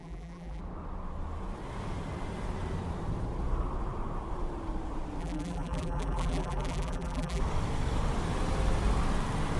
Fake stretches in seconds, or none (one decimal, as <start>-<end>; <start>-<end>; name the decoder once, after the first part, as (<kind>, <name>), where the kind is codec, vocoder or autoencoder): 0.0-0.6 (vocoder, BigVGAN v2); 5.2-7.4